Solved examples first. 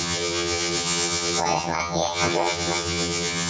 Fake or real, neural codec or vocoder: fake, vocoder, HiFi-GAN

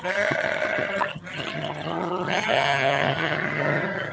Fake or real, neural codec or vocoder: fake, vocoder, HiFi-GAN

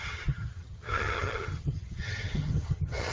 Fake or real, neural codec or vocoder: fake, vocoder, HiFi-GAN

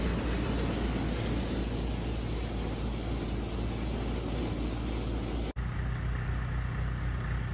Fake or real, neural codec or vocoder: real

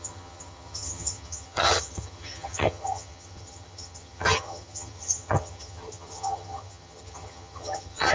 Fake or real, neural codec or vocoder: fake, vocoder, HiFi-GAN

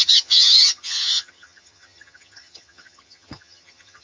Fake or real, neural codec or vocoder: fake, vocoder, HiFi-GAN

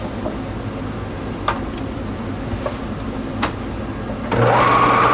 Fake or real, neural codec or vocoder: real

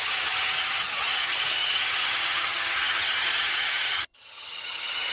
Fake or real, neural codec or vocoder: fake, vocoder, HiFi-GAN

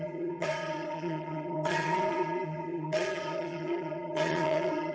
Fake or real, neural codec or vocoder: fake, vocoder, HiFi-GAN